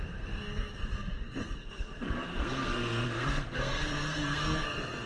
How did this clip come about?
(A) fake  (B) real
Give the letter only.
A